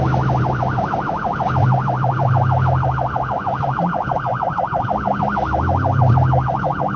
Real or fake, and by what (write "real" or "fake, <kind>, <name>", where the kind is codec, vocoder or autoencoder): real